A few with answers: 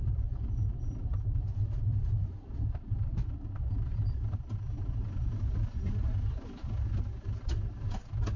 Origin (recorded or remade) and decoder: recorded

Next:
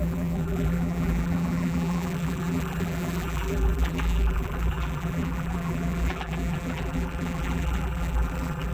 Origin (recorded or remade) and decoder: remade, vocoder, BigVGAN v2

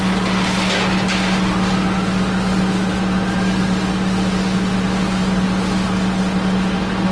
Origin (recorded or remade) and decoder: recorded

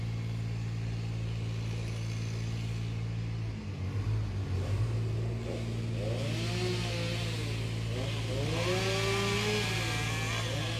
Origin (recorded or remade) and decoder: recorded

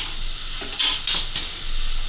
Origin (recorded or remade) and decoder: recorded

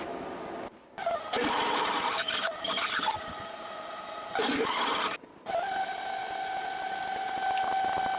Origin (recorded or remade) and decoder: recorded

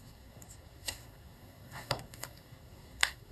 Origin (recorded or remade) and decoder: remade, codec, SNAC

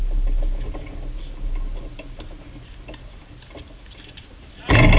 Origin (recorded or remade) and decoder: recorded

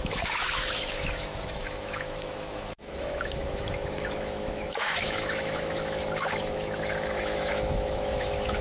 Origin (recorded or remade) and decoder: remade, autoencoder, DAC-VAE